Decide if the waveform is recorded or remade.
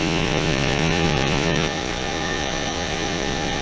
remade